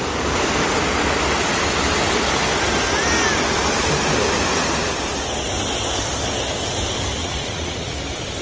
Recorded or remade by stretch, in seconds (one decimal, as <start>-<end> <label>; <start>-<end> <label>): 0.0-7.2 recorded; 7.2-8.0 remade; 8.0-8.4 recorded